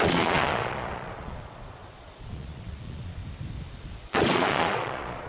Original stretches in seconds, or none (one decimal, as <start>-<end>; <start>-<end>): 3.2-3.9